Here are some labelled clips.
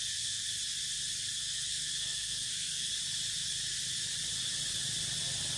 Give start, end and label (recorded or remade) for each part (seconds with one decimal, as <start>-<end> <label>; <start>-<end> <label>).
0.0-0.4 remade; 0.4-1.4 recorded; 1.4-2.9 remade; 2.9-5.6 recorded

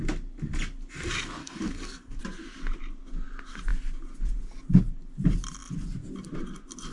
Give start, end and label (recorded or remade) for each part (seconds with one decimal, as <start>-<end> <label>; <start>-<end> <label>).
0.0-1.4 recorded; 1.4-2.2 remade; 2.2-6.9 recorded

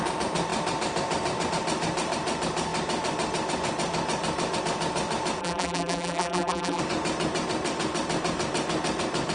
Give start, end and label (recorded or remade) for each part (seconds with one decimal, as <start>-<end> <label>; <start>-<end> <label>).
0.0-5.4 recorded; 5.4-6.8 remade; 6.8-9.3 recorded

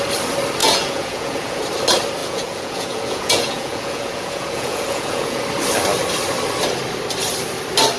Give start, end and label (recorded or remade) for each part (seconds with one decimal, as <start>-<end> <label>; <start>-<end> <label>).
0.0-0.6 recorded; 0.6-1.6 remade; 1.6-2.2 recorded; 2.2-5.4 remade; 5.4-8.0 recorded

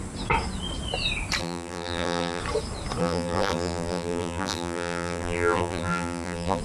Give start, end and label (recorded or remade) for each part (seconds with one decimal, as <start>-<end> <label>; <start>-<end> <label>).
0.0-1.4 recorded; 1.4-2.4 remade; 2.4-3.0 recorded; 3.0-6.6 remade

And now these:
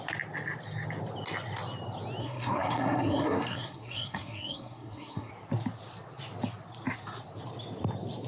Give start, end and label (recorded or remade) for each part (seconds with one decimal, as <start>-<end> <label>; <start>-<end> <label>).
0.0-2.2 recorded; 2.2-5.3 remade; 5.3-8.3 recorded

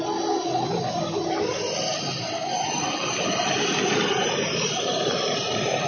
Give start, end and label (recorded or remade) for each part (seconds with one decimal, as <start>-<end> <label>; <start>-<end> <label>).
0.0-5.9 recorded